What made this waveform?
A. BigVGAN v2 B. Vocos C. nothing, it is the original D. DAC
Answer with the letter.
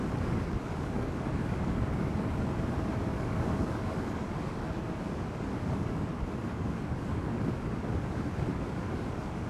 D